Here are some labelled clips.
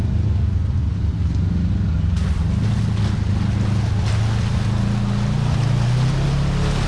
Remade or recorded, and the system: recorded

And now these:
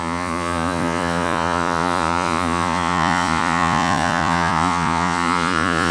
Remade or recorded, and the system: remade, vocoder, Vocos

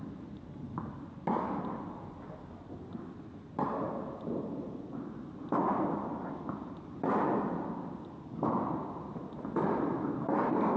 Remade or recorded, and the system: recorded